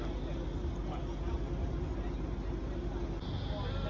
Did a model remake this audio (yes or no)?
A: no